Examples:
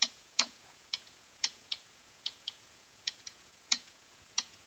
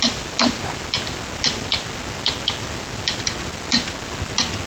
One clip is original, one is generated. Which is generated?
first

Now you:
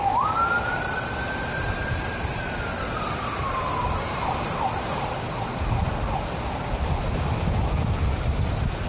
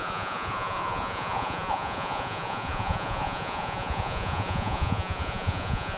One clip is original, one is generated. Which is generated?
second